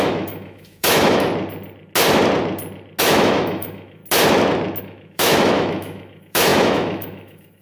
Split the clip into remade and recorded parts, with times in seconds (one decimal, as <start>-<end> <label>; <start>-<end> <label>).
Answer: 0.0-1.3 remade; 1.3-3.0 recorded; 3.0-4.0 remade; 4.0-4.8 recorded; 4.8-7.6 remade